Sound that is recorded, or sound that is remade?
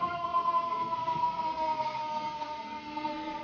remade